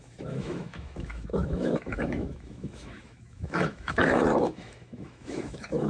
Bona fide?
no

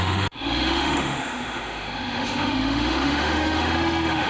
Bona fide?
no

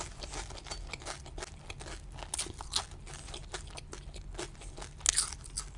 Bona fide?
yes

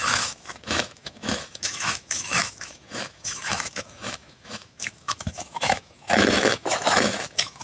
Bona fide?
no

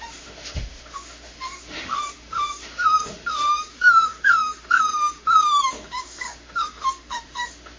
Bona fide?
no